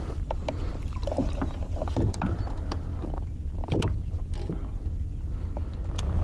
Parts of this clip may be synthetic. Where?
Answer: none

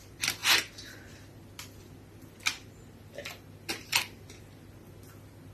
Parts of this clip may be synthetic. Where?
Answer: none

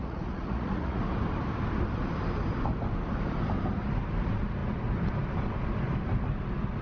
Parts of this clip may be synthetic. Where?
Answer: 0.0-1.0 (vocoder, Vocos)

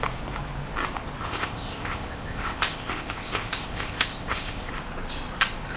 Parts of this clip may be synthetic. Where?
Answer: 1.2-4.7 (codec, ZipCodec)

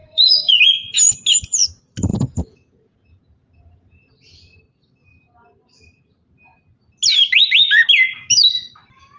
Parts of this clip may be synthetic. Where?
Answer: 0.0-0.6 (vocoder, Vocos); 2.1-4.1

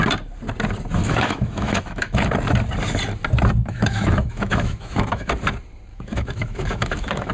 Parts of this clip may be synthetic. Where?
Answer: 1.0-2.3 (autoencoder, DAC-VAE); 3.6-5.3; 5.9-7.3

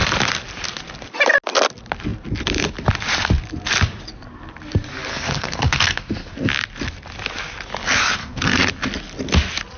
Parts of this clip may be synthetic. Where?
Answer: 5.1-6.3 (codec, SNAC); 8.2-8.7